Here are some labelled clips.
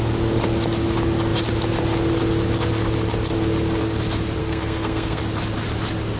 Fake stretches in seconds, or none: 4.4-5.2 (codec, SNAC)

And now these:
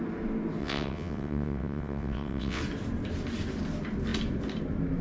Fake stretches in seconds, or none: 0.6-2.6 (vocoder, WaveNeXt)

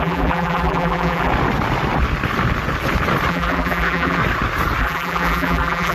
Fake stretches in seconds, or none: 0.0-1.3 (vocoder, BigVGAN v2); 3.3-4.2; 4.8-5.9